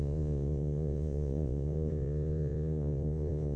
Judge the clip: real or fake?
fake